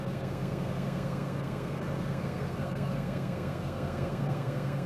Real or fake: fake